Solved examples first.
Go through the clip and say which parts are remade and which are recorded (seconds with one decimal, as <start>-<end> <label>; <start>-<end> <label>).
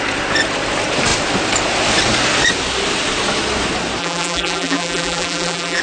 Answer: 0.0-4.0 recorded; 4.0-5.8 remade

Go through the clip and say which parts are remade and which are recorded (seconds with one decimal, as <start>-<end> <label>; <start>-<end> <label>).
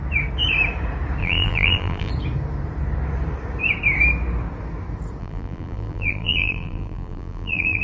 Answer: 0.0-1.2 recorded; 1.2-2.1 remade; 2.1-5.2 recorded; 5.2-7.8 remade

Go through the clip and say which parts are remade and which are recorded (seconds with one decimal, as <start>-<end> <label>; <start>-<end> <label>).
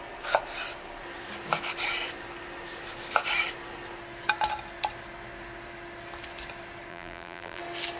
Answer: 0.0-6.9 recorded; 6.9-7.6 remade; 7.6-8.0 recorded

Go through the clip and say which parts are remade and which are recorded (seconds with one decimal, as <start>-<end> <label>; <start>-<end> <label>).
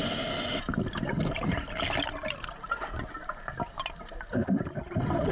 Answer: 0.0-3.2 recorded; 3.2-4.4 remade; 4.4-5.3 recorded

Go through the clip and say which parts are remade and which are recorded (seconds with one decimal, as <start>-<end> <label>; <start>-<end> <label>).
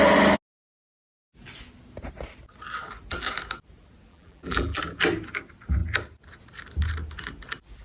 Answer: 0.0-4.1 recorded; 4.1-4.8 remade; 4.8-7.8 recorded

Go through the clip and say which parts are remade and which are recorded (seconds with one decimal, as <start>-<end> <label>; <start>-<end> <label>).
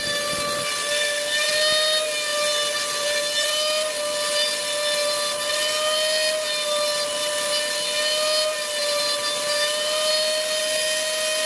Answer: 0.0-8.8 recorded; 8.8-10.1 remade; 10.1-11.5 recorded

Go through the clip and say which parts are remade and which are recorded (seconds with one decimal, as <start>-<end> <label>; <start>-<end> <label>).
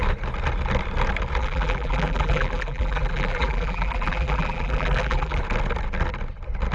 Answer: 0.0-1.4 recorded; 1.4-5.4 remade; 5.4-6.7 recorded